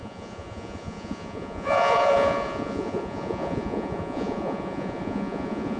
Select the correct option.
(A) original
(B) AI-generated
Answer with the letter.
B